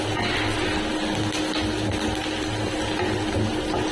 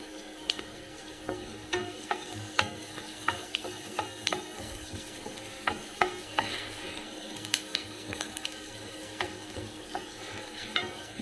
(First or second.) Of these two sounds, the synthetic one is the second